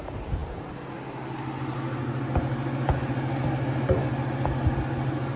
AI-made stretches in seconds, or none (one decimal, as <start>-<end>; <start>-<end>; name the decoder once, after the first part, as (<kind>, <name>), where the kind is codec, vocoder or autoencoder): none